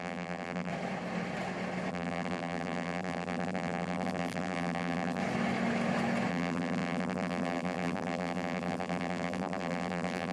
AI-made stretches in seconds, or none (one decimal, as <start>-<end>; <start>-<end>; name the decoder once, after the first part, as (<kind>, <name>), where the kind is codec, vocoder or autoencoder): 0.0-0.7 (vocoder, BigVGAN v2); 1.9-5.2; 6.3-10.3